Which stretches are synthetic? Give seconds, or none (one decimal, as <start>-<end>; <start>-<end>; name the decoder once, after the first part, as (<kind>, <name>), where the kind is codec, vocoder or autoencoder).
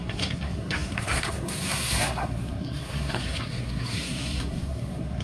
0.0-5.2 (codec, SNAC)